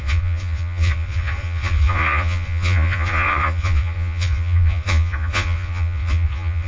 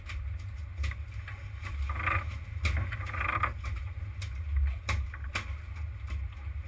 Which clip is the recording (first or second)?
second